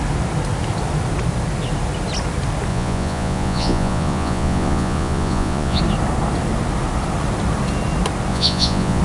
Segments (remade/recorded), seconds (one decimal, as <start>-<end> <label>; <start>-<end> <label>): 0.0-2.7 recorded; 2.7-5.8 remade; 5.8-8.3 recorded; 8.3-9.0 remade